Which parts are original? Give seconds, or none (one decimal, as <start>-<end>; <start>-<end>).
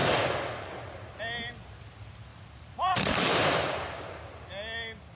1.2-2.3; 4.2-5.1